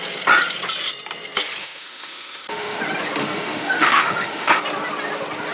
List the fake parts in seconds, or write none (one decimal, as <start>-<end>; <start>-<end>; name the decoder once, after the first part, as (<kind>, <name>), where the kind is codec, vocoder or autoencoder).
1.6-2.8 (autoencoder, DAC-VAE); 3.2-4.6